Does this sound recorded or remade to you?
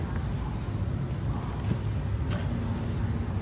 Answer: recorded